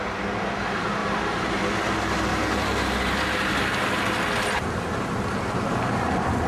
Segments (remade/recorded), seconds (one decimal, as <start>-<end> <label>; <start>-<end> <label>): 0.0-1.0 recorded; 1.0-1.6 remade; 1.6-2.3 recorded; 2.3-6.1 remade; 6.1-6.5 recorded